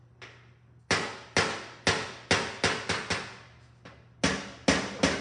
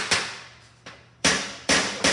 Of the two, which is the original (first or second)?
first